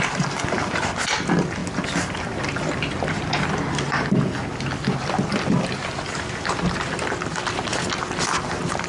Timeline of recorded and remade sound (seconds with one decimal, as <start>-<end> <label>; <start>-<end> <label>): 0.0-8.9 recorded